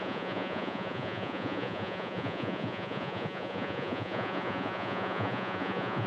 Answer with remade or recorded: remade